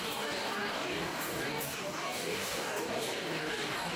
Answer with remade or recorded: remade